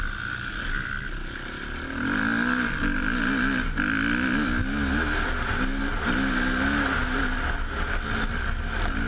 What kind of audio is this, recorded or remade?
recorded